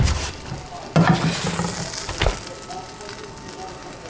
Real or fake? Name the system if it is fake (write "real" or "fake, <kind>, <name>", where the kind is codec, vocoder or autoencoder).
real